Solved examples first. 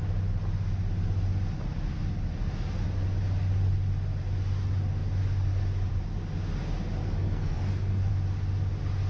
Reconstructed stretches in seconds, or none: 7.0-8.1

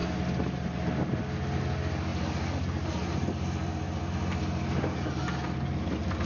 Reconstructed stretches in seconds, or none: none

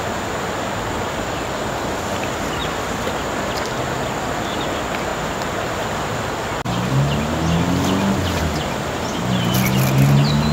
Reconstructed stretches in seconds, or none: none

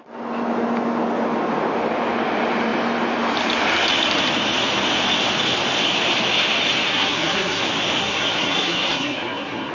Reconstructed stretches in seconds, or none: 6.9-7.6; 8.0-9.7

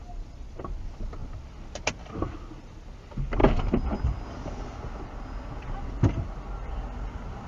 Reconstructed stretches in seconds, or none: 0.0-0.6

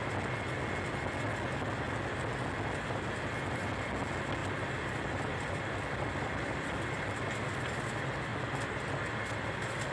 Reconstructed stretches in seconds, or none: 4.4-7.3

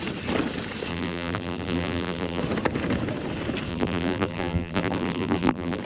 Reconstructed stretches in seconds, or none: 0.9-2.4; 3.7-5.8

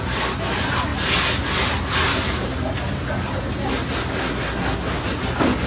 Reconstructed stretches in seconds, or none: 4.2-5.0